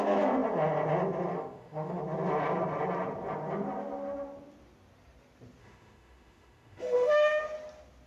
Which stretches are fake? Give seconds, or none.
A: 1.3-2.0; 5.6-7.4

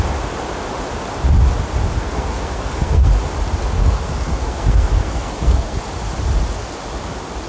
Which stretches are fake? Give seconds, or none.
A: 2.0-3.1; 3.8-5.8

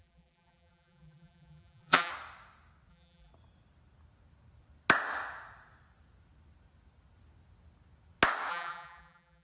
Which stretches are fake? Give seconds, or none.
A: 0.0-2.1; 2.9-3.3; 8.5-9.4

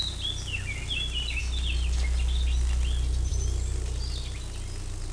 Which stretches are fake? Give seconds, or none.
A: none

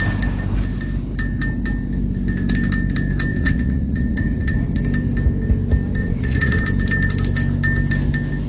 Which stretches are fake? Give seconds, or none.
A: 3.3-4.8; 6.0-6.6

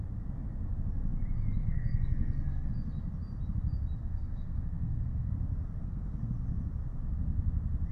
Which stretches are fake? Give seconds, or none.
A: 1.6-2.7; 4.0-5.3; 5.8-6.3

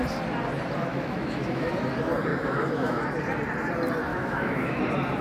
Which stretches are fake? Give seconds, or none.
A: 0.9-1.7; 2.3-3.0; 4.1-4.8